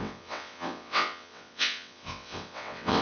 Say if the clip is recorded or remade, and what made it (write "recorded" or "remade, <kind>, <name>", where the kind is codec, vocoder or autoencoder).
remade, vocoder, WaveNeXt